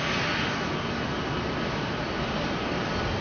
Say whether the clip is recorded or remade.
recorded